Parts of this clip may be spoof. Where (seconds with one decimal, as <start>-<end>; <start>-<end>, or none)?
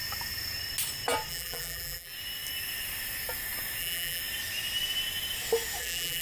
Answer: 1.3-2.1; 3.8-4.2; 5.8-6.2